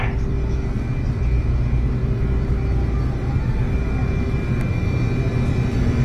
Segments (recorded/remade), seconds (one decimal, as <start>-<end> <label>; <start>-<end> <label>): 0.0-6.0 recorded